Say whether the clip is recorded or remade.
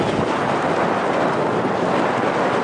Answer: recorded